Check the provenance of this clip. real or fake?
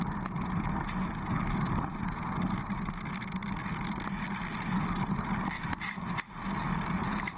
real